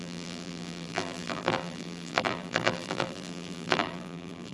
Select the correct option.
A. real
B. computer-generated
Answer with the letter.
B